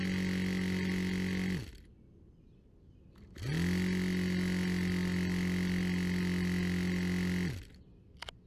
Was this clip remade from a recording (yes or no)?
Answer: no